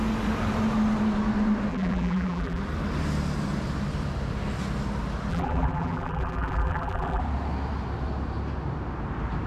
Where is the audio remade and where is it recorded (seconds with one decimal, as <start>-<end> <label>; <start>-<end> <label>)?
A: 0.0-1.7 recorded; 1.7-2.6 remade; 2.6-5.3 recorded; 5.3-7.2 remade; 7.2-9.5 recorded